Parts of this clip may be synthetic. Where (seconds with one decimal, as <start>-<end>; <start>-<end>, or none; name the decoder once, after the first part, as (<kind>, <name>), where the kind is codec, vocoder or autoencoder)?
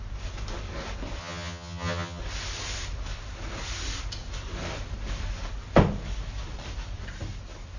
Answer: 1.2-2.2 (vocoder, HiFi-GAN)